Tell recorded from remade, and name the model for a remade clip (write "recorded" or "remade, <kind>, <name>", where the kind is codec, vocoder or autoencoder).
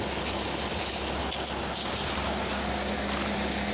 recorded